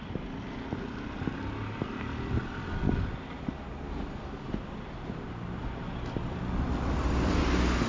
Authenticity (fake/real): real